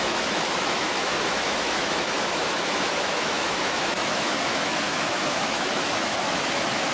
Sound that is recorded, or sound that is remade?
remade